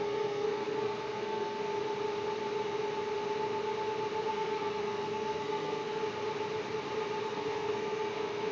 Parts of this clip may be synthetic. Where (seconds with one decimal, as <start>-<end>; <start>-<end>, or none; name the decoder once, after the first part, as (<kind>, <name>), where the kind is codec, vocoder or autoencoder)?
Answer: 0.0-1.7 (codec, SNAC); 4.3-6.0; 7.2-8.5